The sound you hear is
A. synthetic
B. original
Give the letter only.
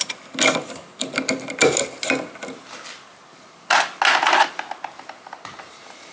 B